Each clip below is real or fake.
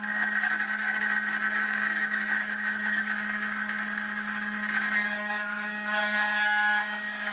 fake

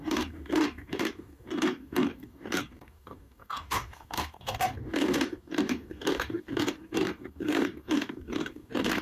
fake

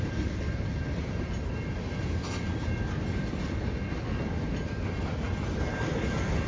real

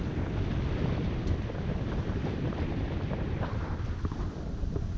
real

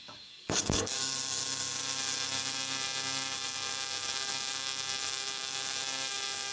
fake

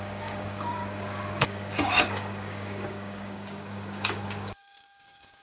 fake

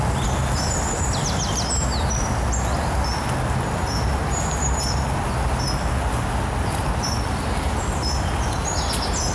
real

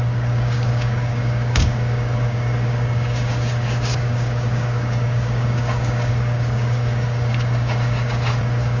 fake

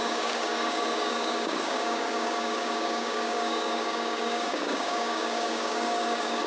fake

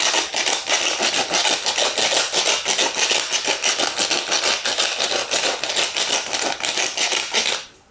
real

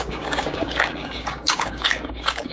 fake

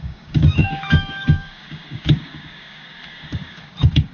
fake